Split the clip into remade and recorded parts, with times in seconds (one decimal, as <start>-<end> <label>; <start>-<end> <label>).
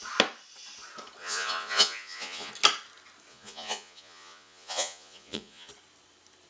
0.0-1.2 recorded; 1.2-2.5 remade; 2.5-3.3 recorded; 3.3-5.7 remade; 5.7-6.5 recorded